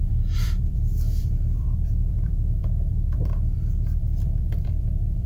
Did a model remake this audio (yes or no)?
yes